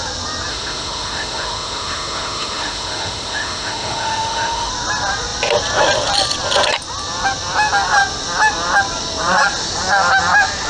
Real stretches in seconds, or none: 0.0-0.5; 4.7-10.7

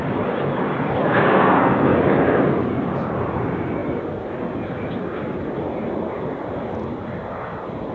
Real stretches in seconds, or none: 0.0-1.0; 2.0-7.9

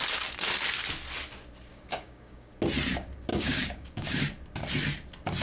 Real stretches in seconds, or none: 0.0-1.7; 2.5-3.3; 4.2-5.4